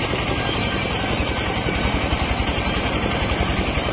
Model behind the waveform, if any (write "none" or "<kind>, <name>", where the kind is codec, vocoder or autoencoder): vocoder, BigVGAN v2